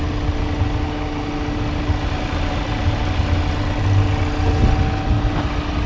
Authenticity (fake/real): real